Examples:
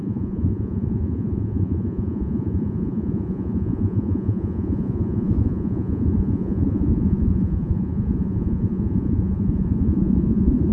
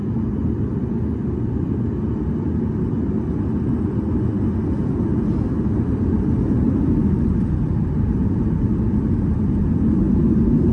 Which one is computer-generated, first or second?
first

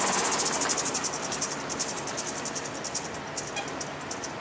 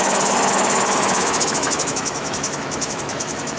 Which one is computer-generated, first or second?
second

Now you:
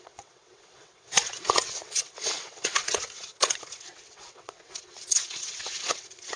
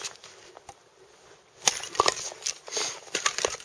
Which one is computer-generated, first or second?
first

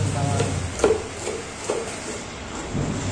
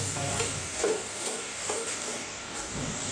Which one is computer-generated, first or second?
second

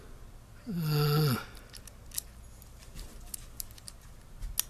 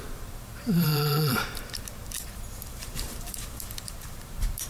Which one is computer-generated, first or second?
second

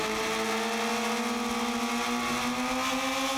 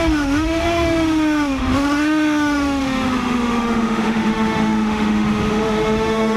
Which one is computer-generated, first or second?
second